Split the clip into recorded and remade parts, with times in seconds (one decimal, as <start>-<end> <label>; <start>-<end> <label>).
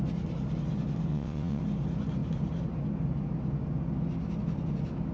0.0-1.1 recorded; 1.1-1.6 remade; 1.6-5.1 recorded